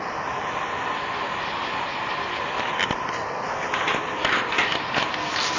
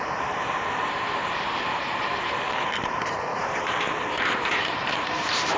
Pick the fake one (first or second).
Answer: second